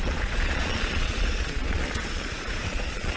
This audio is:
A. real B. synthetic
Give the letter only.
B